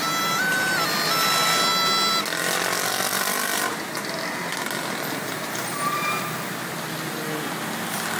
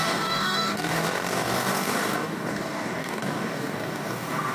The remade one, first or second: second